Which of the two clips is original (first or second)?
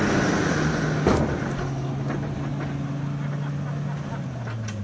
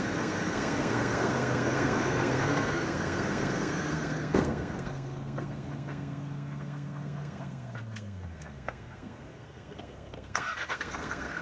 first